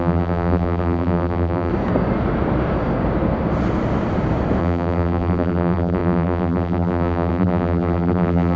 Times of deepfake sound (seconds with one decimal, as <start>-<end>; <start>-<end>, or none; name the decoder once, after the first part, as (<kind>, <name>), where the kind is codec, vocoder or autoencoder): 0.0-1.7 (vocoder, BigVGAN v2); 4.6-8.6